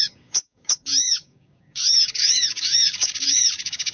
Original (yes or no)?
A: no